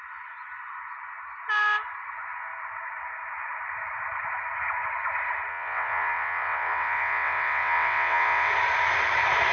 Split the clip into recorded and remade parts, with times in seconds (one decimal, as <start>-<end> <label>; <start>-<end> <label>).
0.0-5.5 recorded; 5.5-8.5 remade; 8.5-9.5 recorded